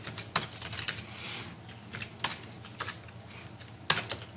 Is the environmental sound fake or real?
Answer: real